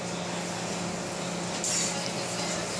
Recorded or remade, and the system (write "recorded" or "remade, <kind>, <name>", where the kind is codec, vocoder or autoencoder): recorded